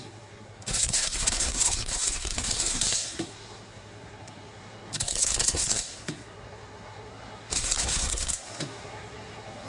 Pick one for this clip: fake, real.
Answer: fake